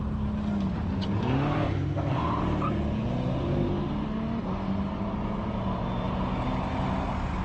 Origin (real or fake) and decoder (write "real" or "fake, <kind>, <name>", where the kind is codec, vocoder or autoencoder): real